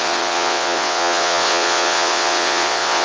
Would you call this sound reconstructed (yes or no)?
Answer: yes